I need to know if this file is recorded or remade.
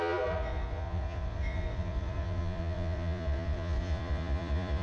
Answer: remade